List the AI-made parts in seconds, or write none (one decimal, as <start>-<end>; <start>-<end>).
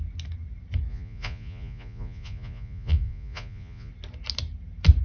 0.9-3.9